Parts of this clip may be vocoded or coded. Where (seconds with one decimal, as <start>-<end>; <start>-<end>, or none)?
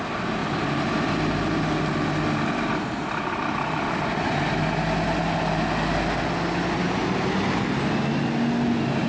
0.4-1.6